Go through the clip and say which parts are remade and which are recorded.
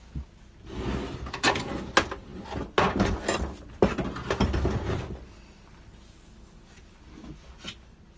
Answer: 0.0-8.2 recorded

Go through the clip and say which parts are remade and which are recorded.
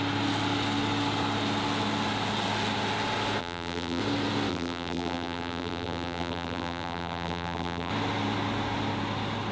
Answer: 0.0-3.4 recorded; 3.4-4.0 remade; 4.0-4.5 recorded; 4.5-7.9 remade; 7.9-9.5 recorded